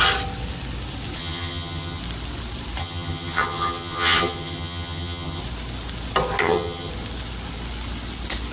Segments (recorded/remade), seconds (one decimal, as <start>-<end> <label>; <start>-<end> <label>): 0.0-1.2 recorded; 1.2-2.0 remade; 2.0-2.8 recorded; 2.8-5.4 remade; 5.4-6.4 recorded; 6.4-6.9 remade; 6.9-8.5 recorded

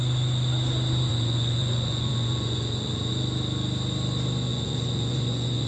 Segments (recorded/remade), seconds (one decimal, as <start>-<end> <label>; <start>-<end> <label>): 0.0-1.1 recorded; 1.1-3.1 remade; 3.1-4.5 recorded; 4.5-5.7 remade

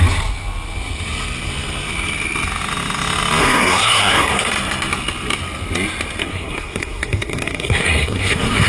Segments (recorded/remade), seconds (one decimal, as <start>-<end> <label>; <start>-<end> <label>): 0.0-3.4 recorded; 3.4-4.5 remade; 4.5-6.2 recorded; 6.2-8.7 remade

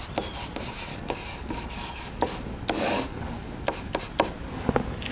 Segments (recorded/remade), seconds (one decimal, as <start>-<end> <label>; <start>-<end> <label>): 0.0-0.9 recorded; 0.9-4.0 remade; 4.0-5.1 recorded

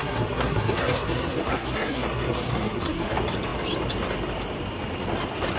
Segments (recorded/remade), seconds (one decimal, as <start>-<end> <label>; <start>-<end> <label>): 0.0-3.1 remade; 3.1-5.6 recorded